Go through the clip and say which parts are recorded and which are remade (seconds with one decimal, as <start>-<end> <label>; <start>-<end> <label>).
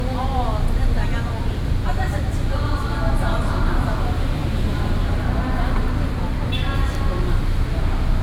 0.0-4.4 recorded; 4.4-5.1 remade; 5.1-8.2 recorded